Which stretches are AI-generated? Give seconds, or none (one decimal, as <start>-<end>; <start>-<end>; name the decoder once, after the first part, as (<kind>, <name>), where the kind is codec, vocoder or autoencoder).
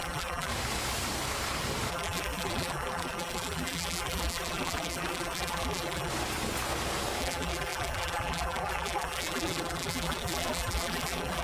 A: 0.0-0.5 (vocoder, BigVGAN v2); 1.9-6.1; 7.2-11.4